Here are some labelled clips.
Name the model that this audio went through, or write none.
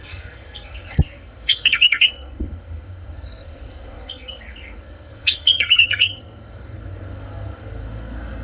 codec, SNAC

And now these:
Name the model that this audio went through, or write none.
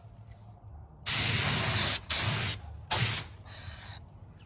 none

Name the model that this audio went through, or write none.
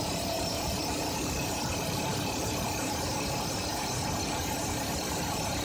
vocoder, BigVGAN v2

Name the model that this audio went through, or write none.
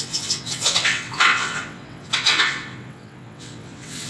vocoder, WaveNeXt